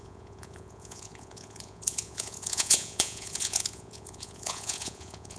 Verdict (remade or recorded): remade